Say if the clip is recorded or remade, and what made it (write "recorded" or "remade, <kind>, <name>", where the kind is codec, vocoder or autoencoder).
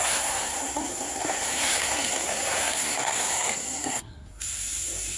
remade, codec, SNAC